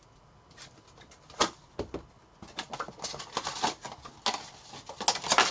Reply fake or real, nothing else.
real